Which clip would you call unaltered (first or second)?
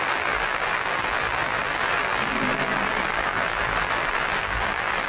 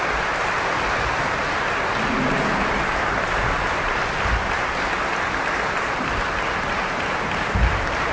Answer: second